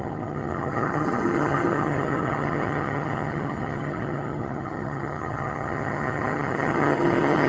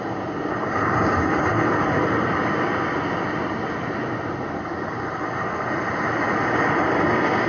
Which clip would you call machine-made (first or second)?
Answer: first